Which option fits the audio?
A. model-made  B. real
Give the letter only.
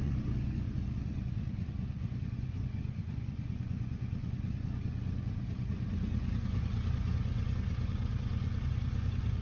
A